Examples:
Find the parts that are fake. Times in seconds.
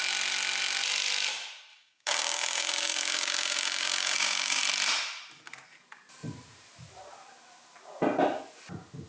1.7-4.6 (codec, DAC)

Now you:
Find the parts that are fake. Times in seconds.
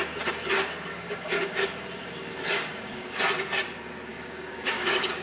0.9-3.2 (codec, DAC); 4.1-5.2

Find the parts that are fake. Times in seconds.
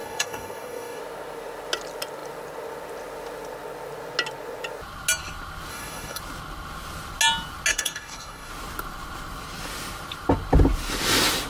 0.0-1.0 (codec, DAC); 5.7-6.2; 7.7-8.5